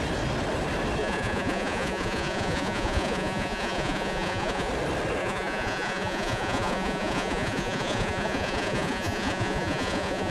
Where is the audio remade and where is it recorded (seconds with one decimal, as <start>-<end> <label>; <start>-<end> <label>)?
0.0-1.0 recorded; 1.0-4.7 remade; 4.7-5.2 recorded; 5.2-10.3 remade